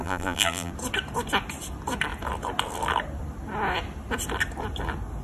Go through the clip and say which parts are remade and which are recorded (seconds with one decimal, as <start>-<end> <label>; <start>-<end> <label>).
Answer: 0.0-0.7 remade; 0.7-5.2 recorded